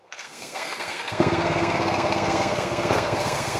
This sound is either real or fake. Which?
fake